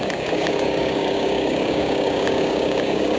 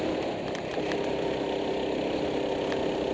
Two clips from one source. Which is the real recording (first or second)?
second